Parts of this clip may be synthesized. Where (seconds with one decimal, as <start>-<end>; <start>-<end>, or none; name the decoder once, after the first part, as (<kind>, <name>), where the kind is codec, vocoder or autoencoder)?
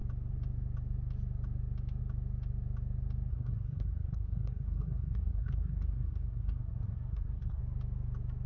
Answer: 3.3-7.6 (codec, SNAC)